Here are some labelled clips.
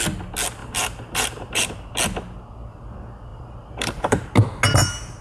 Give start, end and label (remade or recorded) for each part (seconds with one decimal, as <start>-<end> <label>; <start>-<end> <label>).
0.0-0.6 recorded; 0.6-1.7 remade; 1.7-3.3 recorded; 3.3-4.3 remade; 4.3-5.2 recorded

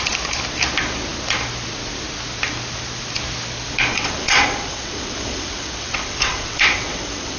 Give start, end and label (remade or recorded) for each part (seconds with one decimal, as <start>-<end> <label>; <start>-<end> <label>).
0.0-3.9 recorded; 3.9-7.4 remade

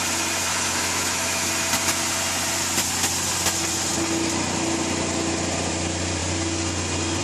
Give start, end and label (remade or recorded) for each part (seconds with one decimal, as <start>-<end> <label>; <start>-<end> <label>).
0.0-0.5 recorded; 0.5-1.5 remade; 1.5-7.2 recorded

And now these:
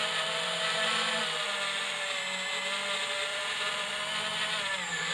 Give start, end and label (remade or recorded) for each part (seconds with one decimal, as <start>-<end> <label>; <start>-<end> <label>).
0.0-1.2 remade; 1.2-3.3 recorded; 3.3-3.9 remade; 3.9-5.1 recorded